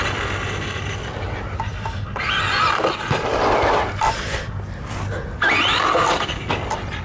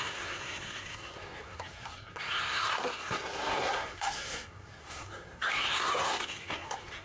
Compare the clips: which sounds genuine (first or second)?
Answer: first